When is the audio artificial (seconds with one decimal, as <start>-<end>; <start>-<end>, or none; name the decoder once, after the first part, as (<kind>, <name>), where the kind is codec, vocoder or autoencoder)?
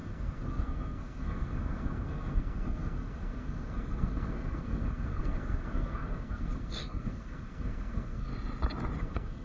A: 0.0-8.3 (codec, SNAC); 9.0-9.4